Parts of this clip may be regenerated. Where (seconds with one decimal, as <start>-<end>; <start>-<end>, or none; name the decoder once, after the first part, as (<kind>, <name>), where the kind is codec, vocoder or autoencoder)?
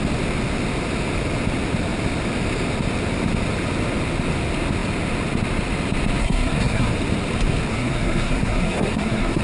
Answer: 6.2-6.9 (codec, SNAC); 7.7-9.4